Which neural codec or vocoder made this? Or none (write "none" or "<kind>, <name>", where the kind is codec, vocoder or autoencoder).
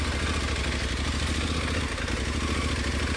none